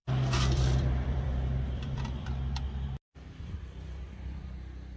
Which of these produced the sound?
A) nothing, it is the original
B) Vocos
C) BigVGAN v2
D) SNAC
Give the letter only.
C